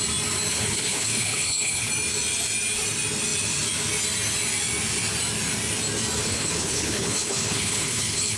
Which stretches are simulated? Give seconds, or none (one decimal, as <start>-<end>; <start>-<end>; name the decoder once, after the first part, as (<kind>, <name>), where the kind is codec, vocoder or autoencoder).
0.5-1.9 (codec, HILCodec); 6.2-8.4

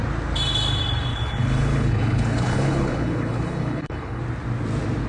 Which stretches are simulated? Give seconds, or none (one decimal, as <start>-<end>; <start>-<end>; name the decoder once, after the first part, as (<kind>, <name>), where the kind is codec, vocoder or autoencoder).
1.1-4.2 (codec, HILCodec)

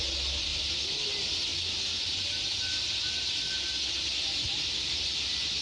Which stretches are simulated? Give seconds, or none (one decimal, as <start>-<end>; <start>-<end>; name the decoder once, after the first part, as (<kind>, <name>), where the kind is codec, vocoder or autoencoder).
none

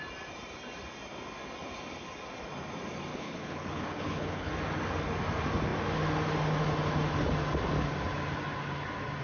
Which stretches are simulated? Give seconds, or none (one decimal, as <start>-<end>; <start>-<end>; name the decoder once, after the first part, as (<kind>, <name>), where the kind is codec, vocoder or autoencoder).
3.1-4.5 (codec, HILCodec)

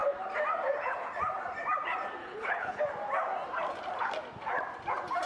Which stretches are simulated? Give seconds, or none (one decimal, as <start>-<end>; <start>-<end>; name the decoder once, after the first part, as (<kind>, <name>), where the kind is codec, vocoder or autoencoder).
2.2-2.8 (codec, HILCodec)

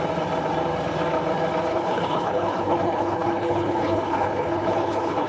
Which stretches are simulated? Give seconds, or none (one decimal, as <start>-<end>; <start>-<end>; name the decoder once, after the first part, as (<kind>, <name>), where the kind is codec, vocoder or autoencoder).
1.7-5.3 (codec, HILCodec)

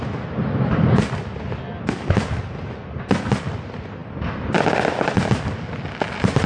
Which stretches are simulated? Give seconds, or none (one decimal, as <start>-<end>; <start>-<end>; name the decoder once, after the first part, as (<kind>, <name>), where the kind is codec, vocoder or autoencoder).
none

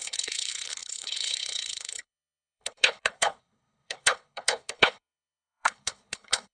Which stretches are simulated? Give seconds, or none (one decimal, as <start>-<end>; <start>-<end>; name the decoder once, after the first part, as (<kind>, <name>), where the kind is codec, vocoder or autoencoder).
0.0-6.5 (codec, HILCodec)